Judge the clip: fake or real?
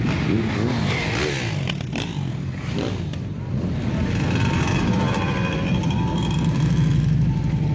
real